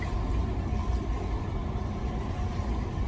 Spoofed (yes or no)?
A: no